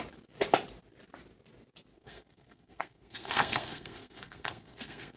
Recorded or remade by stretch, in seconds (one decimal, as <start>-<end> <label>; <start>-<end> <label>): 0.0-1.9 recorded; 1.9-5.2 remade